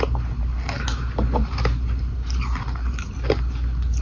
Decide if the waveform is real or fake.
real